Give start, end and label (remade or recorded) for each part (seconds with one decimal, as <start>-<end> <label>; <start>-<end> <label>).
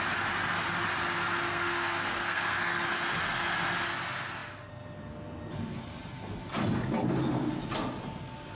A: 0.0-1.5 recorded; 1.5-2.8 remade; 2.8-8.5 recorded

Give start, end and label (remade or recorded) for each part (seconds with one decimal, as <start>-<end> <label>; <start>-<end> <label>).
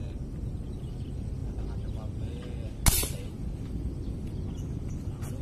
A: 0.0-5.4 recorded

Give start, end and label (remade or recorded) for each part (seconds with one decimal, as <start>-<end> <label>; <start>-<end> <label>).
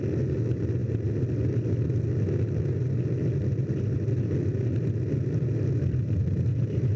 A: 0.0-7.0 recorded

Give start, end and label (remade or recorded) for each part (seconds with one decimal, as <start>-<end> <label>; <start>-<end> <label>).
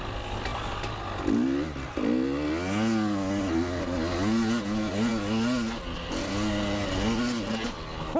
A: 0.0-8.2 recorded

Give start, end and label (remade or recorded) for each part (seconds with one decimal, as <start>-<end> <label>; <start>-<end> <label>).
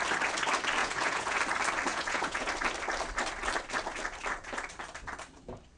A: 0.0-0.8 recorded; 0.8-1.4 remade; 1.4-1.9 recorded; 1.9-2.5 remade; 2.5-5.8 recorded